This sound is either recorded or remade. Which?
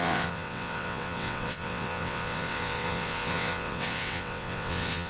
remade